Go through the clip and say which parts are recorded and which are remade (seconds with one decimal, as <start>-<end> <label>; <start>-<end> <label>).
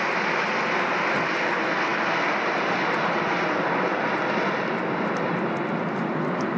0.0-6.6 recorded